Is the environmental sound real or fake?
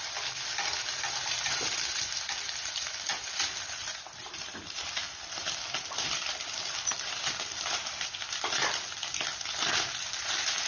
real